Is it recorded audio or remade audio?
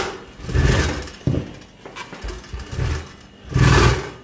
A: recorded